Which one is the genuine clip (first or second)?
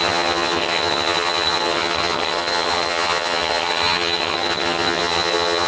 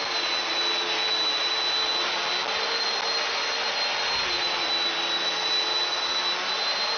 second